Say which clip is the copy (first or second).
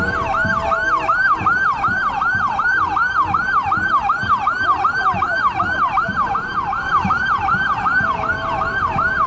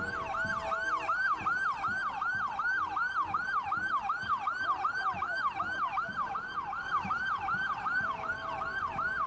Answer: first